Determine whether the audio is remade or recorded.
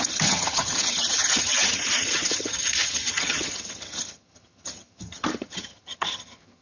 remade